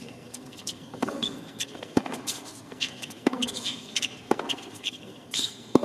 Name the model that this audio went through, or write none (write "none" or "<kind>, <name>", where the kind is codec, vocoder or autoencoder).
codec, SNAC